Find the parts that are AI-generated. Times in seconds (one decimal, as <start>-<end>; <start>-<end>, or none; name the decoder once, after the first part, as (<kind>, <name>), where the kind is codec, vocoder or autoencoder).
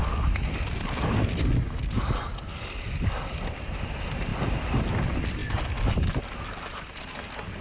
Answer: none